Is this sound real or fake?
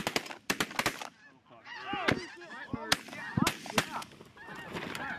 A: real